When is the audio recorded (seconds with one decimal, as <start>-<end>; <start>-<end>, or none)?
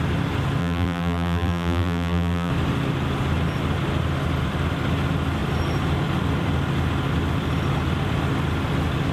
0.0-0.6; 2.5-9.1